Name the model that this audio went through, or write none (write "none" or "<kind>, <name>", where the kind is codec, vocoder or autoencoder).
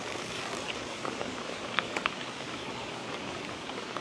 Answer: codec, DAC